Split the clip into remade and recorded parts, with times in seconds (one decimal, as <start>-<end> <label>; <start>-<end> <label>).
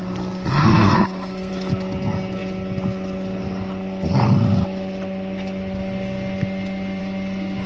0.0-0.6 recorded; 0.6-1.5 remade; 1.5-7.7 recorded